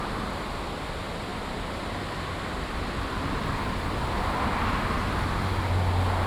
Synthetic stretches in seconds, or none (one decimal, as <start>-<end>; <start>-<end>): 1.3-1.8